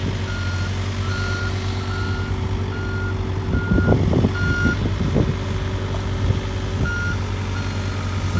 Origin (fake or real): real